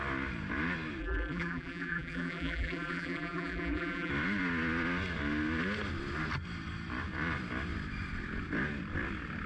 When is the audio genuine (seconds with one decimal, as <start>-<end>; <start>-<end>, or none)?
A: 0.0-1.0; 4.1-9.5